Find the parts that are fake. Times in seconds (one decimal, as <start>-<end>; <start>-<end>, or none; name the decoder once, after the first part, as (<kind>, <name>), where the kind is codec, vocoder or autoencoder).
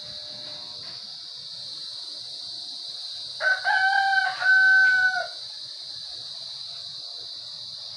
5.0-5.9 (vocoder, Vocos)